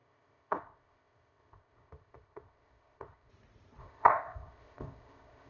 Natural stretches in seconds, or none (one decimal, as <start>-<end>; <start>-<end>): 3.3-3.8

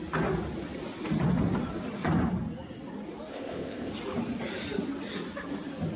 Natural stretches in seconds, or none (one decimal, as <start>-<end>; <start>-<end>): 0.0-3.3; 3.9-6.0

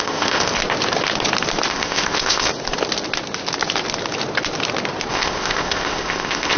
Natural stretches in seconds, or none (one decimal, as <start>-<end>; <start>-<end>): 0.6-1.7; 2.5-5.1

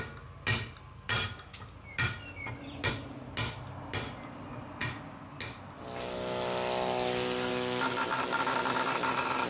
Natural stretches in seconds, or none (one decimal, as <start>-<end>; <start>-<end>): 0.0-9.5

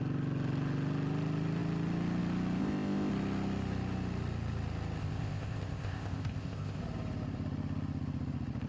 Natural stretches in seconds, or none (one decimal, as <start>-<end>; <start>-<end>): 0.0-2.6; 3.1-5.0; 6.8-8.7

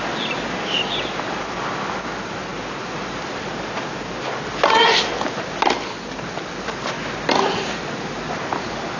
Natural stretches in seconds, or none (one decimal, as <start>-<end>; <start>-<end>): 0.0-9.0

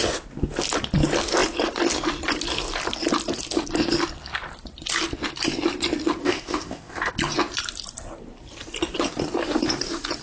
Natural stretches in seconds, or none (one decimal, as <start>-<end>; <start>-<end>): 0.0-6.2; 7.1-10.2